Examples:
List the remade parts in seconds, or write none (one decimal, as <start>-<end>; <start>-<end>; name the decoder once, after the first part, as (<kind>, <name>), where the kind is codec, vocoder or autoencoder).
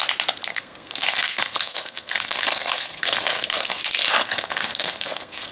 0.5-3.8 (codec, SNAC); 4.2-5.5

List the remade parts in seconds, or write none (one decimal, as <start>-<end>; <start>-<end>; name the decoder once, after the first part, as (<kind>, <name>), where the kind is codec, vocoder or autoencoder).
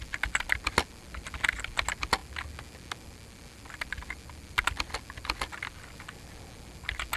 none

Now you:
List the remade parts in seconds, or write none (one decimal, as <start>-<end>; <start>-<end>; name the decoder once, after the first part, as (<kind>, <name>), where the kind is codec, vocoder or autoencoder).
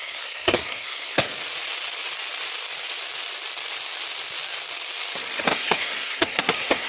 0.0-1.3 (codec, SNAC); 5.4-6.9